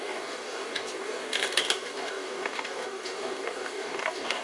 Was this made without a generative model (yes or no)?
no